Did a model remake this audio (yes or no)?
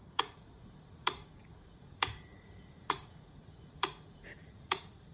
yes